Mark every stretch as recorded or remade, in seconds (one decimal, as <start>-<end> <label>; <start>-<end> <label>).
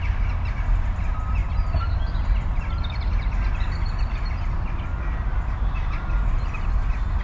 0.0-7.2 recorded